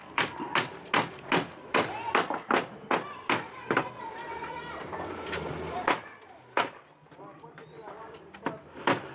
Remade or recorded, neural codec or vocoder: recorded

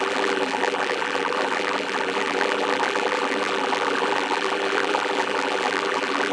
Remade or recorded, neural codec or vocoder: remade, vocoder, BigVGAN v2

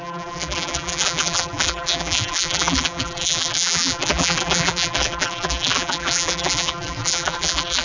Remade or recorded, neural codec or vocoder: remade, vocoder, BigVGAN v2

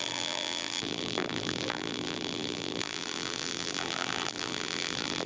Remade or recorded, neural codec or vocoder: remade, vocoder, BigVGAN v2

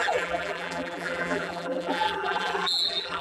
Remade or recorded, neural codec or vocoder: remade, vocoder, BigVGAN v2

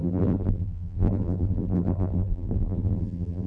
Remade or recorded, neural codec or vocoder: remade, vocoder, BigVGAN v2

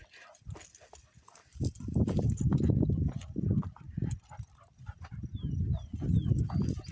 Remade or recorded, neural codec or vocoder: remade, vocoder, BigVGAN v2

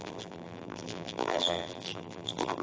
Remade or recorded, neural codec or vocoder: remade, vocoder, BigVGAN v2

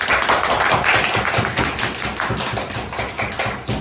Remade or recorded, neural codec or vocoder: recorded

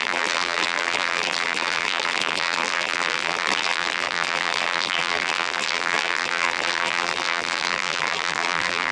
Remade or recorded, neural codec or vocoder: remade, vocoder, BigVGAN v2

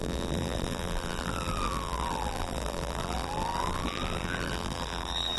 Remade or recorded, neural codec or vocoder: remade, vocoder, BigVGAN v2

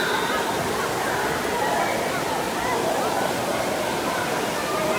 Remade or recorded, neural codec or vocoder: recorded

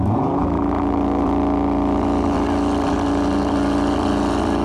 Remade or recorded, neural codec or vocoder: recorded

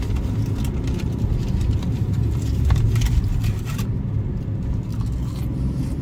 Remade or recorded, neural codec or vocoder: recorded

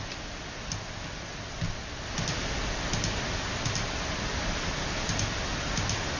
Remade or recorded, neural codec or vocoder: recorded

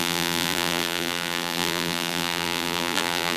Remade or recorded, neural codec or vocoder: remade, vocoder, BigVGAN v2